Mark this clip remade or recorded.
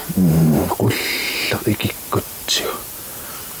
recorded